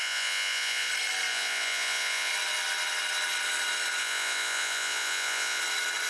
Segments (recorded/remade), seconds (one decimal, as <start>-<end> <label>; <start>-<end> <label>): 0.0-0.9 remade; 0.9-1.3 recorded; 1.3-2.3 remade; 2.3-4.0 recorded; 4.0-5.6 remade; 5.6-6.1 recorded